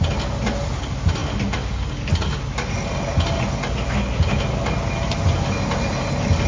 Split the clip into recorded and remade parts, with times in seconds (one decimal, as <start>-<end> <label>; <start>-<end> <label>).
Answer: 0.0-6.5 recorded